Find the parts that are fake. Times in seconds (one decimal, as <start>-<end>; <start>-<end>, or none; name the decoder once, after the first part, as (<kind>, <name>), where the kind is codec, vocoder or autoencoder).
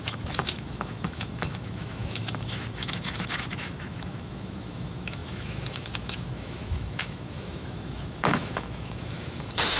0.0-9.8 (autoencoder, DAC-VAE)